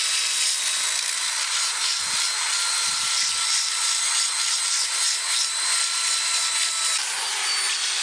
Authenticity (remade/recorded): recorded